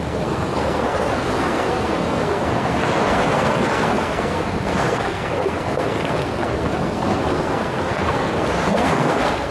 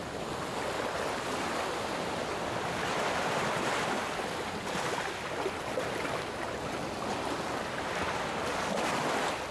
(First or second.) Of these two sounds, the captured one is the second